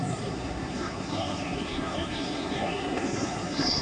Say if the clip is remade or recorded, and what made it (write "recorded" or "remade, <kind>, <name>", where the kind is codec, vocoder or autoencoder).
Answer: remade, codec, SNAC